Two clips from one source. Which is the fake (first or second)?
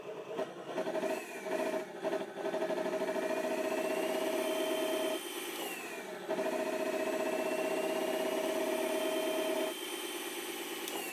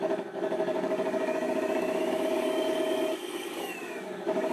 second